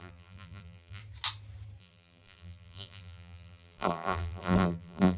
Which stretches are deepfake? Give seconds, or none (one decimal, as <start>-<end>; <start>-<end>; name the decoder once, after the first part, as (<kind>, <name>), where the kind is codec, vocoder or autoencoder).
0.0-1.0 (vocoder, BigVGAN v2); 1.8-5.2

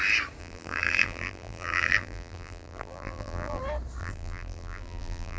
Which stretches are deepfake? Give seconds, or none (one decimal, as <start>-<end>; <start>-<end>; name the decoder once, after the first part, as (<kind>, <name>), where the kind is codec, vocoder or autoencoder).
0.4-3.6 (vocoder, BigVGAN v2); 4.0-5.4

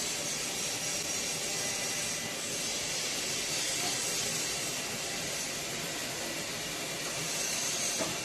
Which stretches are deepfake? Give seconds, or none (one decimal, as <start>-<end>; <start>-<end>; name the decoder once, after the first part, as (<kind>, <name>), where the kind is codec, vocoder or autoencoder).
none

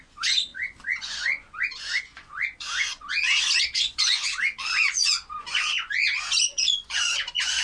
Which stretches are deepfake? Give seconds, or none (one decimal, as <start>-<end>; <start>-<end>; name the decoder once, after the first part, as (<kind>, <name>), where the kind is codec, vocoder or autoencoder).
0.0-7.6 (vocoder, Vocos)